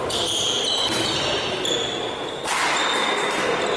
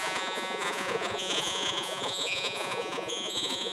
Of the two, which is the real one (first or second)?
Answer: first